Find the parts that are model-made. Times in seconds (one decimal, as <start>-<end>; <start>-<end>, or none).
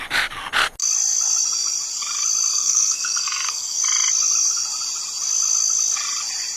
2.5-3.8